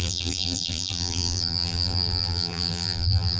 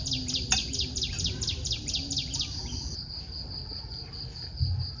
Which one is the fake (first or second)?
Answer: first